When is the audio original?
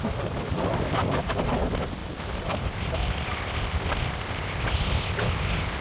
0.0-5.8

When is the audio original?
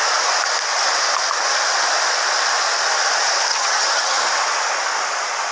0.0-3.5; 4.2-5.5